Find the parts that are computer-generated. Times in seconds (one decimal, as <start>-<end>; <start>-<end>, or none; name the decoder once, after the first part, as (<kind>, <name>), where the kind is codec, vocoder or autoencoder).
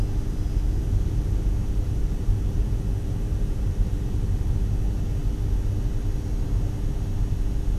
1.6-4.7 (vocoder, BigVGAN v2)